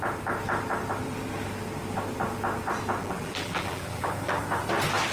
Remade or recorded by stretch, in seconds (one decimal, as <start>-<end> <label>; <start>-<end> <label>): 0.0-3.0 recorded; 3.0-4.4 remade; 4.4-5.1 recorded